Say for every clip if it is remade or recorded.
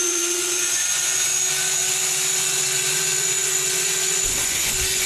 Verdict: remade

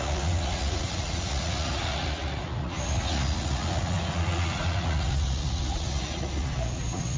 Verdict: remade